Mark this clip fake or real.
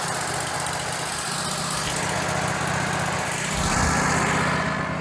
real